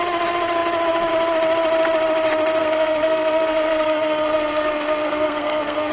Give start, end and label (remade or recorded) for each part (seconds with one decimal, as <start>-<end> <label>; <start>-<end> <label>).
0.0-2.6 recorded; 2.6-5.9 remade